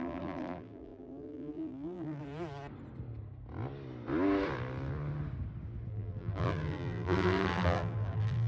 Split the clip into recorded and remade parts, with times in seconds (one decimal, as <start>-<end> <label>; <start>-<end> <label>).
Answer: 0.0-2.2 remade; 2.2-5.9 recorded; 5.9-8.5 remade